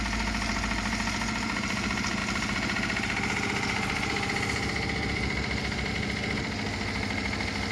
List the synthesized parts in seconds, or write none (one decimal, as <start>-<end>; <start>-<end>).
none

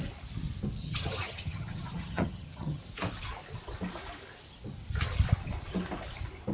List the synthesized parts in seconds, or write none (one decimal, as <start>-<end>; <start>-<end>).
0.8-2.8

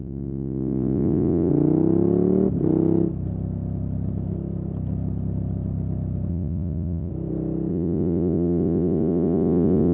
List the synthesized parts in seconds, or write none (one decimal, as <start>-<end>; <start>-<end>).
0.0-1.5; 6.3-7.1; 7.7-9.9

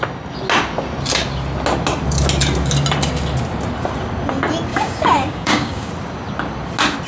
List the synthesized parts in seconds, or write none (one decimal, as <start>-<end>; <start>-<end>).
4.7-5.9

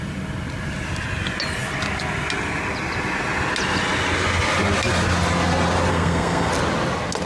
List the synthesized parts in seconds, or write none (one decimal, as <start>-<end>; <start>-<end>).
5.9-6.5